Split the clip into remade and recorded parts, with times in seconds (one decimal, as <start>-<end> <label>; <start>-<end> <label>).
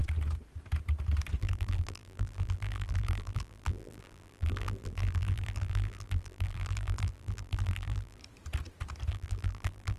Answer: 0.0-1.4 recorded; 1.4-8.2 remade; 8.2-9.1 recorded; 9.1-10.0 remade